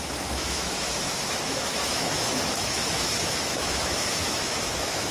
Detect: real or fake fake